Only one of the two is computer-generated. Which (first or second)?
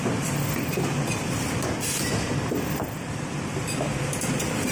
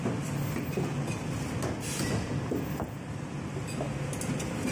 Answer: first